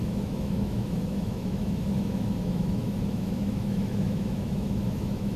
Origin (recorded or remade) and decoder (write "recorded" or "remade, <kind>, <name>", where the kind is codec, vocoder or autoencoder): remade, autoencoder, DAC-VAE